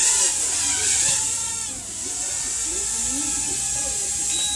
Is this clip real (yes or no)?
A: yes